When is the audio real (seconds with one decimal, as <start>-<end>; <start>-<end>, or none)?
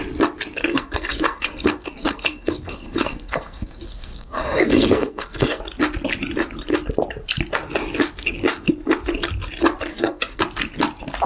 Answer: 0.0-0.7; 5.6-9.9; 10.4-11.3